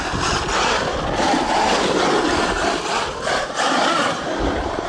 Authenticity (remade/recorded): recorded